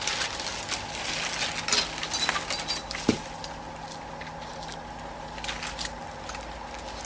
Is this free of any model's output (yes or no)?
yes